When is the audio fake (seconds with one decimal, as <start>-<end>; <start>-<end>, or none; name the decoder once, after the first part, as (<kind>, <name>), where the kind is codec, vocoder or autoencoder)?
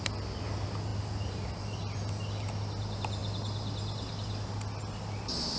none